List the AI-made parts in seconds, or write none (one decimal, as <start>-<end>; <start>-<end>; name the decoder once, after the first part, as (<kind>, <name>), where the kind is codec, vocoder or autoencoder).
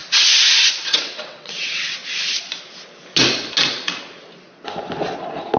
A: 0.6-2.0 (vocoder, WaveNeXt)